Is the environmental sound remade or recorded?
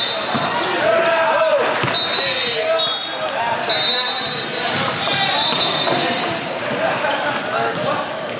recorded